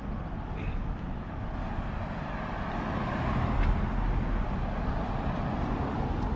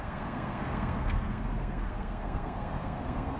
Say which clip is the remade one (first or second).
second